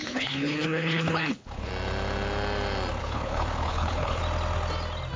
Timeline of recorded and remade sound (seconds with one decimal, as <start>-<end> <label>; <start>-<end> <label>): 0.0-1.7 remade; 1.7-3.0 recorded; 3.0-4.2 remade; 4.2-5.2 recorded